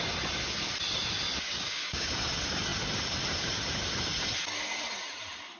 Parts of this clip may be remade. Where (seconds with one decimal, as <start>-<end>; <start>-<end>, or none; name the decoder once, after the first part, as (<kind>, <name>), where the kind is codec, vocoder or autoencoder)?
1.5-2.1 (codec, DAC)